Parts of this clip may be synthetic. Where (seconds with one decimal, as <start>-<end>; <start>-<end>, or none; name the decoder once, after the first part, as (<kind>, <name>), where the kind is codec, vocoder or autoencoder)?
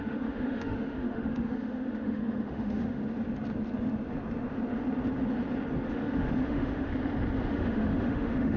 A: 0.0-3.0 (autoencoder, DAC-VAE); 5.9-6.9; 7.5-8.6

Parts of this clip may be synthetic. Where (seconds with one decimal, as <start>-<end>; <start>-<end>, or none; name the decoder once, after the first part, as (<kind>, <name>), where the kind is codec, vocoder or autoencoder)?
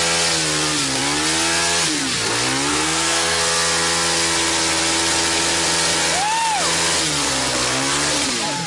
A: 2.7-3.4 (codec, SNAC)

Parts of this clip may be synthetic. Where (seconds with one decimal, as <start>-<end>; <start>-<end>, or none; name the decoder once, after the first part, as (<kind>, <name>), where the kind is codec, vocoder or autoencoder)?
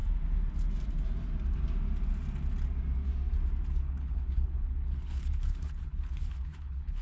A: 3.7-7.0 (codec, HILCodec)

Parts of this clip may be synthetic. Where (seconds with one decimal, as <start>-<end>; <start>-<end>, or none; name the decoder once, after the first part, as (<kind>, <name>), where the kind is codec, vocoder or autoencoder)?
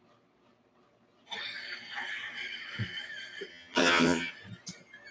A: 3.5-4.3 (vocoder, HiFi-GAN)